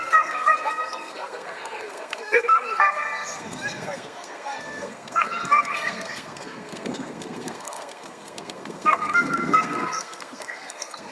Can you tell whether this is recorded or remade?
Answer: remade